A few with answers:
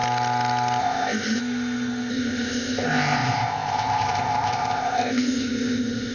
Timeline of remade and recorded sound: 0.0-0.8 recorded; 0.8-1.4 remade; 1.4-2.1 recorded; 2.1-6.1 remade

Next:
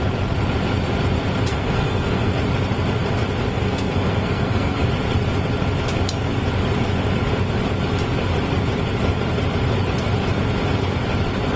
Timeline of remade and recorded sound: 0.0-1.5 recorded; 1.5-2.3 remade; 2.3-3.5 recorded; 3.5-4.9 remade; 4.9-11.6 recorded